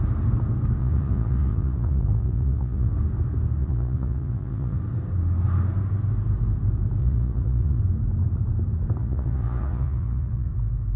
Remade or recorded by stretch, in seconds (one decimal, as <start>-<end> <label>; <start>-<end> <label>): 0.0-0.8 recorded; 0.8-2.9 remade; 2.9-3.6 recorded; 3.6-4.8 remade; 4.8-7.0 recorded; 7.0-7.8 remade; 7.8-9.0 recorded; 9.0-10.5 remade; 10.5-11.0 recorded